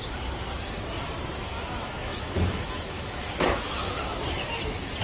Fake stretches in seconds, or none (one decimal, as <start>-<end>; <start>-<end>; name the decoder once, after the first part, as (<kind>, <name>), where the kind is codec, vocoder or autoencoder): 1.4-4.0 (autoencoder, DAC-VAE)